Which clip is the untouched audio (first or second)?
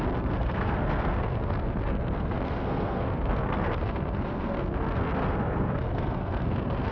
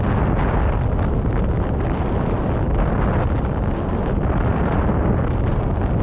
second